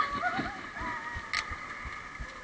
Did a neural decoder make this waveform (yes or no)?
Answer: no